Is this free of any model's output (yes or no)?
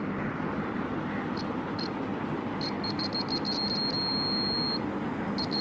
yes